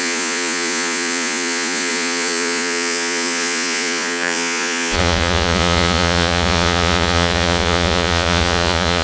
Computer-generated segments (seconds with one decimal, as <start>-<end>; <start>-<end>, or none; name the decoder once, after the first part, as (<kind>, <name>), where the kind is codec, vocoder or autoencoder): 0.0-9.0 (vocoder, Vocos)